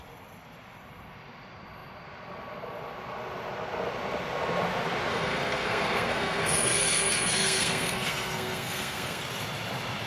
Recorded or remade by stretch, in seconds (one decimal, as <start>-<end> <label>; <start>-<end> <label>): 0.0-5.1 recorded; 5.1-9.2 remade; 9.2-10.1 recorded